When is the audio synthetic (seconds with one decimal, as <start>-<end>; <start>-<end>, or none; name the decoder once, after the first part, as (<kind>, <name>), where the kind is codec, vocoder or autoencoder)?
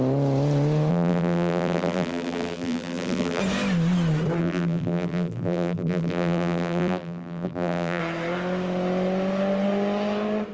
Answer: 0.9-3.4 (vocoder, BigVGAN v2); 4.4-8.0